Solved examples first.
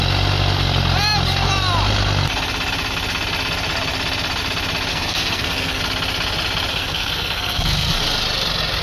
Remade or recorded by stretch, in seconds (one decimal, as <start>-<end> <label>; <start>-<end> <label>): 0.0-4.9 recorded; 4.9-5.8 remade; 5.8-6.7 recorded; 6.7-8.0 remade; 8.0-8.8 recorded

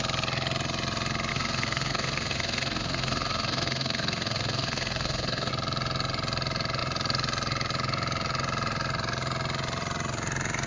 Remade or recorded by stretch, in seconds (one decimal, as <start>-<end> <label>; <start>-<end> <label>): 0.0-1.3 recorded; 1.3-5.5 remade; 5.5-10.7 recorded

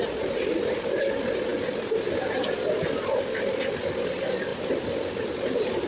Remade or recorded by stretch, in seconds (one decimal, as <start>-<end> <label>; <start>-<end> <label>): 0.0-5.9 recorded

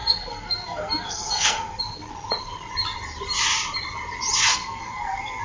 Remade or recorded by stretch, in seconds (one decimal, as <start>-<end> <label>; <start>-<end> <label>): 0.0-1.8 remade; 1.8-4.5 recorded; 4.5-5.4 remade

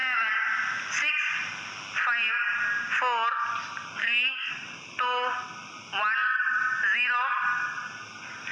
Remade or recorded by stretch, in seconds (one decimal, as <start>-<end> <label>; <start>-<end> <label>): 0.0-4.0 recorded; 4.0-4.5 remade; 4.5-8.5 recorded

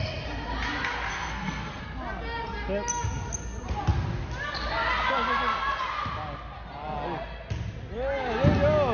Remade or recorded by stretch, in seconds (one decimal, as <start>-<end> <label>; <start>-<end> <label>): 0.0-1.1 recorded; 1.1-1.8 remade; 1.8-8.9 recorded

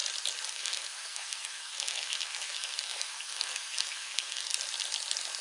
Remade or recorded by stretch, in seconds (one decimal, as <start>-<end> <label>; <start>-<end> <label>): 0.0-0.5 recorded; 0.5-4.5 remade; 4.5-5.4 recorded